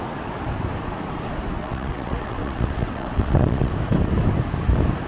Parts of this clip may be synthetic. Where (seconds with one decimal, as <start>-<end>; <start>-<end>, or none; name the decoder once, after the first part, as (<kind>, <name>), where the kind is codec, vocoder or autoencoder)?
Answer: 1.6-3.7 (vocoder, WaveNeXt)